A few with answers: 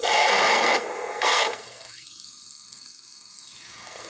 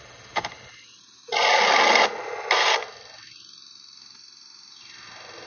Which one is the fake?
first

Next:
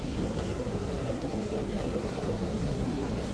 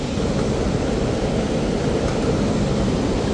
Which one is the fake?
first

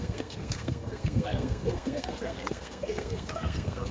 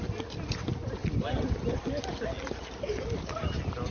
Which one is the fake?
first